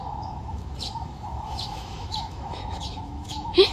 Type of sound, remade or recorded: remade